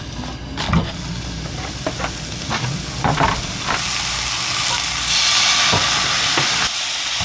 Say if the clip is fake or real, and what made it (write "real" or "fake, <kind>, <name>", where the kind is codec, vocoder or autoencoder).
real